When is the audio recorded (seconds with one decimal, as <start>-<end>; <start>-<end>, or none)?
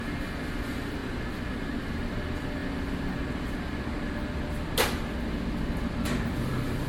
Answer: 0.0-6.9